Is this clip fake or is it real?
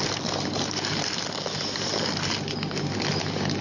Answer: real